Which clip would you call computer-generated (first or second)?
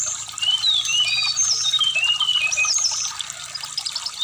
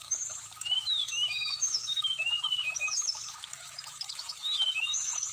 second